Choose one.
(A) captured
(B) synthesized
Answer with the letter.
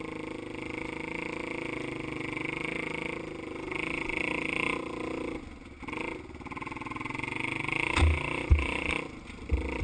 A